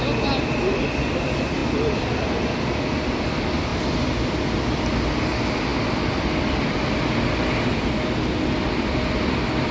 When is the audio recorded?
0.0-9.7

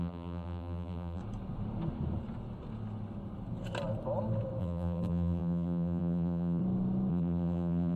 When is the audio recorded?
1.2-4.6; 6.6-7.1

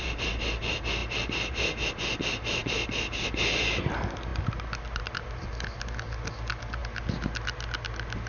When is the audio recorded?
0.0-8.3